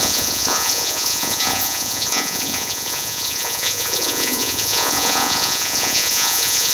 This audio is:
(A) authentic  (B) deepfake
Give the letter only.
B